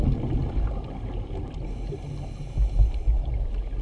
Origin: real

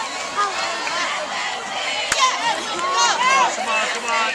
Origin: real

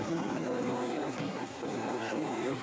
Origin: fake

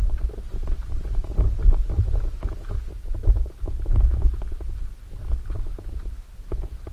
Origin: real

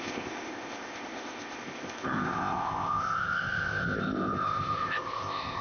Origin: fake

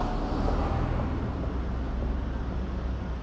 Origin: real